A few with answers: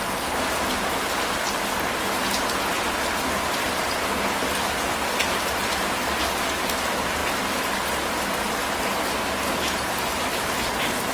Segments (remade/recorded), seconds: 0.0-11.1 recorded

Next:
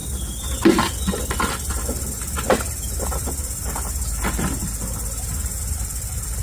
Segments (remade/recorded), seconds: 0.0-6.4 recorded

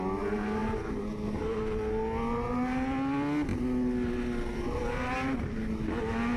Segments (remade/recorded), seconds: 0.0-6.4 recorded

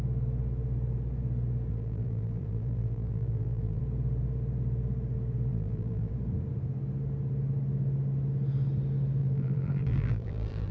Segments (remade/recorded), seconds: 0.0-1.7 recorded; 1.7-3.8 remade; 3.8-5.5 recorded; 5.5-6.1 remade; 6.1-9.2 recorded; 9.2-10.7 remade